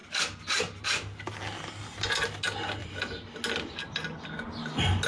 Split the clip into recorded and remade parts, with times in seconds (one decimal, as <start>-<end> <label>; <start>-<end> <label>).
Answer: 0.0-2.8 recorded; 2.8-3.4 remade; 3.4-5.1 recorded